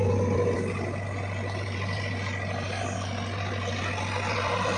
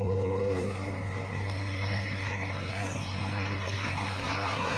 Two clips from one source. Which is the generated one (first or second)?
second